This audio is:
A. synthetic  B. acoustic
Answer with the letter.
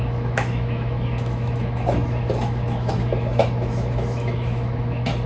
A